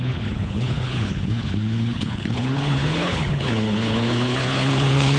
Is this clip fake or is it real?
fake